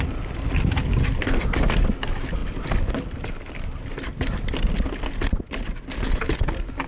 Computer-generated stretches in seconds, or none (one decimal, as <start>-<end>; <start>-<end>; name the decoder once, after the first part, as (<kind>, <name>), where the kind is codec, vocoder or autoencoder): none